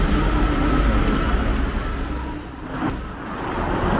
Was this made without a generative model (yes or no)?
yes